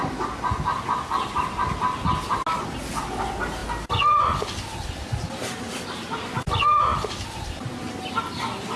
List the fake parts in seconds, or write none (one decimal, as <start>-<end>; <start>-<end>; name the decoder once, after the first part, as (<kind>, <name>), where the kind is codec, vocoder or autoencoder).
none

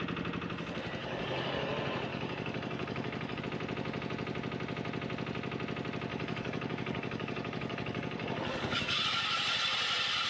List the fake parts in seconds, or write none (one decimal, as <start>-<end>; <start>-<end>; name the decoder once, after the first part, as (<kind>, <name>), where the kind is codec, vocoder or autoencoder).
1.0-1.7 (codec, DAC); 2.1-3.4; 6.1-9.0

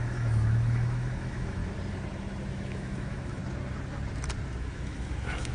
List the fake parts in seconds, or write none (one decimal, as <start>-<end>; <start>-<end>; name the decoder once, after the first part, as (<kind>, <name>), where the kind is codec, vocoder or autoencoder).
0.0-1.6 (autoencoder, DAC-VAE); 2.5-3.4; 4.6-5.5

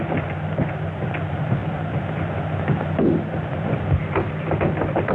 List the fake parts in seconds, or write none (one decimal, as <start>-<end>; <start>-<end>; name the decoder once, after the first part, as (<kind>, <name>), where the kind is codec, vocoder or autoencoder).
0.0-5.1 (vocoder, BigVGAN v2)

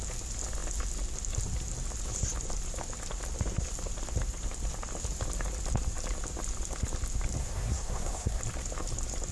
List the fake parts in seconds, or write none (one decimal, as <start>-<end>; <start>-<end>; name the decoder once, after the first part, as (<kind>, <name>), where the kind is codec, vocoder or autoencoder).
7.4-8.4 (codec, SNAC)

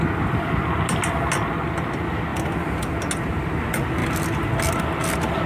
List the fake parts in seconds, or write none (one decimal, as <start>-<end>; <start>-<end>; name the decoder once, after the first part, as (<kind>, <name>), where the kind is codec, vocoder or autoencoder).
none

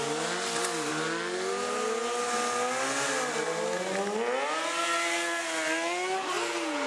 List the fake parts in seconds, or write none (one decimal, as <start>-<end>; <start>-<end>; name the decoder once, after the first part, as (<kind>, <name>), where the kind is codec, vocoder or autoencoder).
none

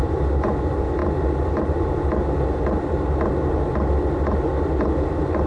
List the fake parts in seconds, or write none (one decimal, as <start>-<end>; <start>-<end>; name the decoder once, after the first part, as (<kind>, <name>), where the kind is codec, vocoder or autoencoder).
none